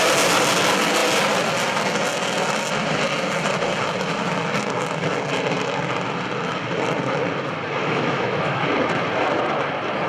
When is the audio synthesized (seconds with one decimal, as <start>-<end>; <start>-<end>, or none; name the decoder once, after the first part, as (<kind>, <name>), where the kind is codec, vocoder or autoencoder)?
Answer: 7.8-8.6 (autoencoder, DAC-VAE)